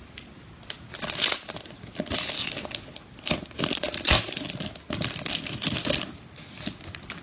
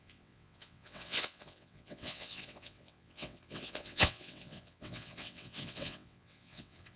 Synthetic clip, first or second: second